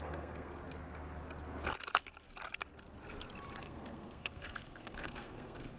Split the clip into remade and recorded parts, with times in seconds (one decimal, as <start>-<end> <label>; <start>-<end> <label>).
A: 0.0-0.6 remade; 0.6-3.6 recorded; 3.6-5.8 remade